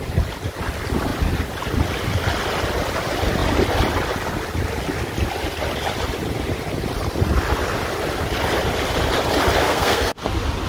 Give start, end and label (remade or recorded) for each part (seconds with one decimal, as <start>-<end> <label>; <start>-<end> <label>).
0.0-9.6 recorded; 9.6-10.2 remade; 10.2-10.7 recorded